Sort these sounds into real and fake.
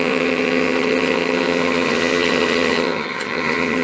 fake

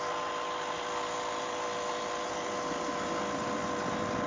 real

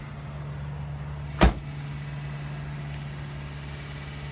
real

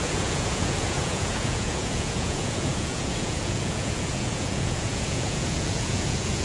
fake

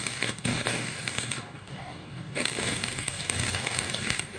fake